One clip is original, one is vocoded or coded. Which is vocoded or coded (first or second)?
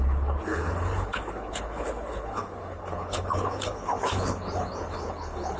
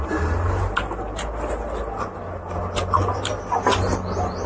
first